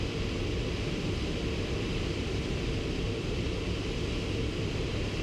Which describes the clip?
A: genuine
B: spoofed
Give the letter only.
A